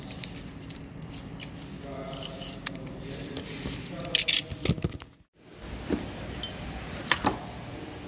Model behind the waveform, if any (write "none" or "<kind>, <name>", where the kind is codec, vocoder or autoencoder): none